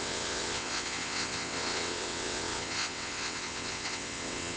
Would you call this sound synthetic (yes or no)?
yes